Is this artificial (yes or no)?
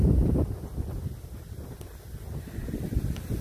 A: no